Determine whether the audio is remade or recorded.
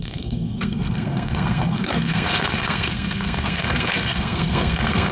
remade